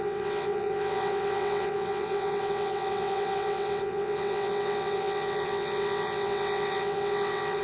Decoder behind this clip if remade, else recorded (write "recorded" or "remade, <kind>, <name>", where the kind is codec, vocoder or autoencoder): remade, vocoder, WaveNeXt